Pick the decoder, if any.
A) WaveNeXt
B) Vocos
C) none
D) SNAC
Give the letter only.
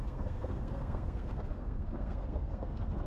D